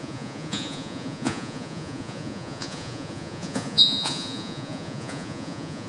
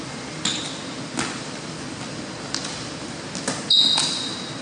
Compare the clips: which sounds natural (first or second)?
second